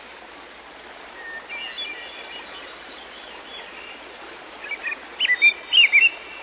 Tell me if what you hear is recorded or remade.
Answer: recorded